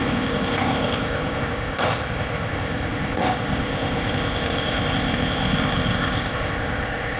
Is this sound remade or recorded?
remade